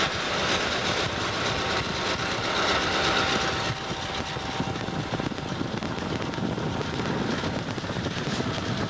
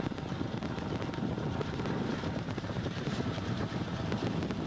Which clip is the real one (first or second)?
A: first